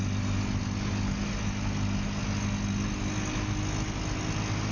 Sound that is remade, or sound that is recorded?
recorded